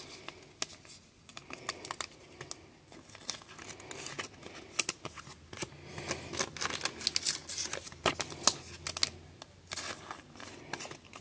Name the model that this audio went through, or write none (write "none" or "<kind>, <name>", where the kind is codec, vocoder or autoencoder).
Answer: none